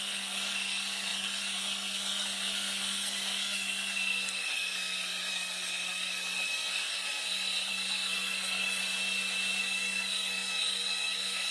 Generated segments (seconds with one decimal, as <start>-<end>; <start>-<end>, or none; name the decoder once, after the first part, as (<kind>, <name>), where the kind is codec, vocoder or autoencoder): 0.0-8.8 (codec, SNAC); 9.6-11.5